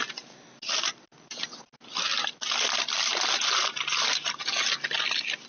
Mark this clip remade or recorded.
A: recorded